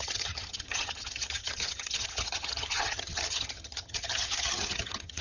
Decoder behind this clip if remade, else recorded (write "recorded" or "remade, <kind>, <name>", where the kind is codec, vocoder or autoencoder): remade, vocoder, HiFi-GAN